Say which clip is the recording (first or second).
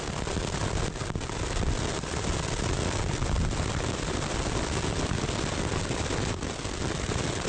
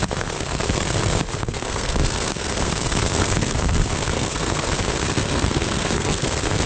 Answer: first